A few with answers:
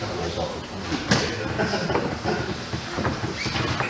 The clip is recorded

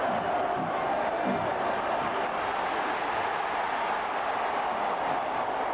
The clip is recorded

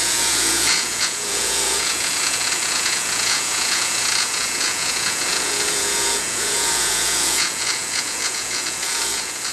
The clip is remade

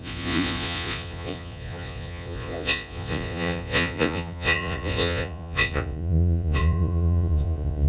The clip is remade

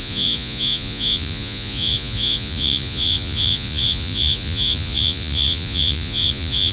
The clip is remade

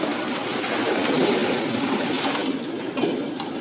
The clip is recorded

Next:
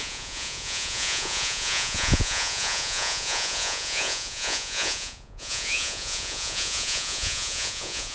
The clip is remade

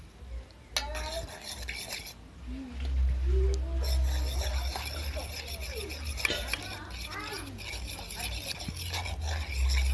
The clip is recorded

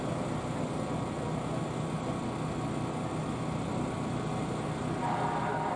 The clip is recorded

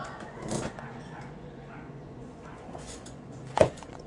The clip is remade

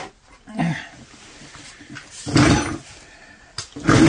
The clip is recorded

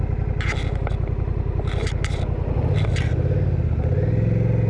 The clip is recorded